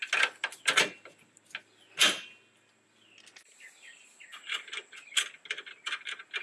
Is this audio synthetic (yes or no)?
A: no